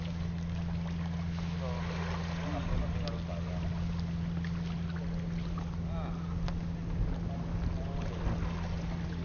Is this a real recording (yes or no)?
yes